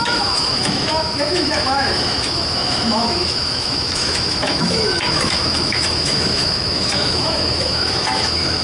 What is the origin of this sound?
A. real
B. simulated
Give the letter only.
B